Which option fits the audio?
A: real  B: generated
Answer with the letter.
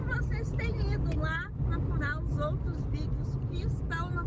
A